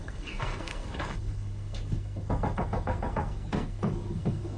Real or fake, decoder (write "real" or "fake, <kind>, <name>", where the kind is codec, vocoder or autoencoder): fake, codec, SNAC